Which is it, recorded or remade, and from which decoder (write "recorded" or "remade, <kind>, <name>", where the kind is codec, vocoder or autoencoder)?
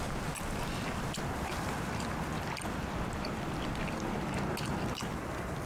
recorded